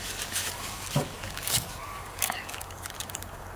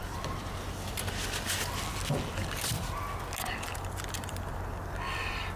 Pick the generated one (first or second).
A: first